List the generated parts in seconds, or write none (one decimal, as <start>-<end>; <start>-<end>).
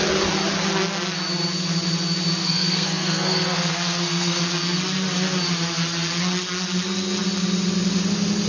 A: 2.4-4.4